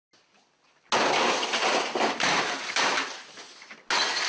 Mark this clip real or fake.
real